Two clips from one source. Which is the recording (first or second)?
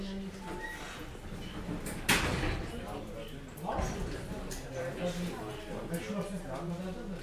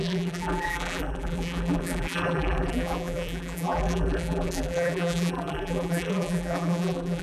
first